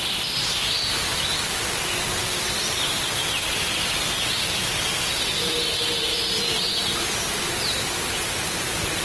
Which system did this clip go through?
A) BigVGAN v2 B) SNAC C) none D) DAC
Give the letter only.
C